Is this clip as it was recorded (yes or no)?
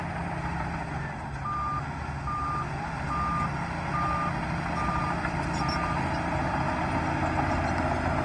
yes